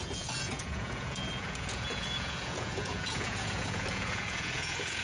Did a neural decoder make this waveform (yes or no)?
yes